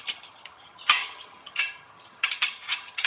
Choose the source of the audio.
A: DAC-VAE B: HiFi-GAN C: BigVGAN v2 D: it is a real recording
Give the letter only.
B